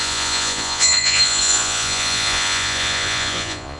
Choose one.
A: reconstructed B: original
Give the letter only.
A